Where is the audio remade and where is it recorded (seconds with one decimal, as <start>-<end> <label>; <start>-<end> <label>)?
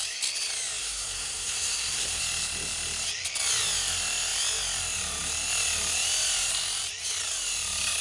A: 0.0-0.8 recorded; 0.8-2.2 remade; 2.2-8.0 recorded